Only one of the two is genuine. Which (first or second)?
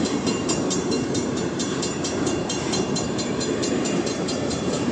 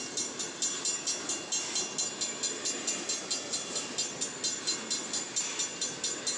second